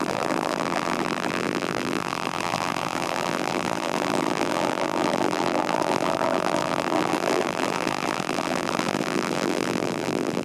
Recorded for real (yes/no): no